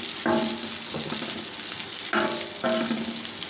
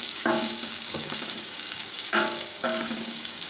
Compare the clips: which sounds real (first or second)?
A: first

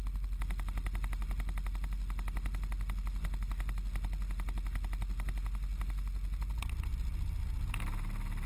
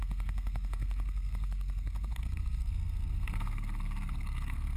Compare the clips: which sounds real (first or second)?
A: first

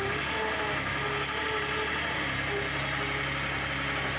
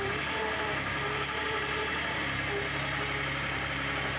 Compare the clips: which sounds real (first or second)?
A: first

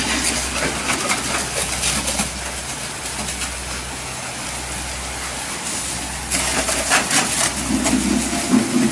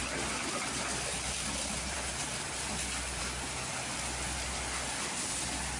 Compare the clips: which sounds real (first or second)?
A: first